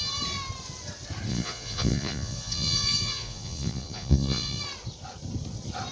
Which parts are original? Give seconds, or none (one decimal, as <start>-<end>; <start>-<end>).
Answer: 0.0-1.3; 4.6-5.9